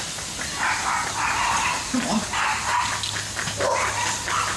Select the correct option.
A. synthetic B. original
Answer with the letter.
B